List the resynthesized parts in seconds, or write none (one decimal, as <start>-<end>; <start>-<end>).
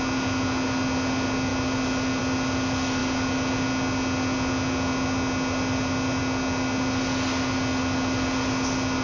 none